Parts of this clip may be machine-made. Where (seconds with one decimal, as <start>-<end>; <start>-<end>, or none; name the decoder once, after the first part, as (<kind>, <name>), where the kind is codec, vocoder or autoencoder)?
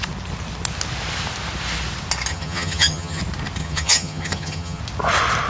2.3-3.2 (vocoder, HiFi-GAN); 3.6-4.8